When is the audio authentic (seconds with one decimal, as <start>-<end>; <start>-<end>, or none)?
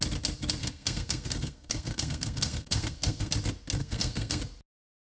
0.0-0.6; 3.3-3.8; 4.4-5.0